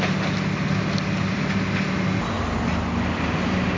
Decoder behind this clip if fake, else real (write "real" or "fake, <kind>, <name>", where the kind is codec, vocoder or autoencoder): real